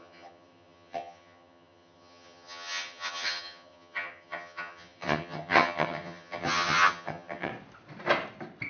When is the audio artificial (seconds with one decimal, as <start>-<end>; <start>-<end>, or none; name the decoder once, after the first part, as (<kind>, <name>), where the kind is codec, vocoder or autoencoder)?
0.0-7.5 (vocoder, HiFi-GAN)